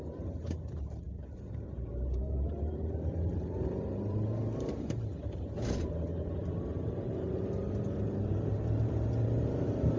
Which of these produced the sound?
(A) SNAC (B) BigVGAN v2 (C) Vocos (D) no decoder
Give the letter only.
B